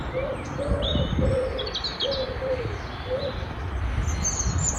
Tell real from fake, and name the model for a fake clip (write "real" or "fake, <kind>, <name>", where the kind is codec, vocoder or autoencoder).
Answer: fake, vocoder, BigVGAN v2